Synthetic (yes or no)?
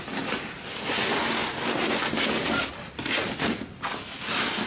no